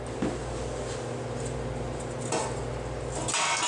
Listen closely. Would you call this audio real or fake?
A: real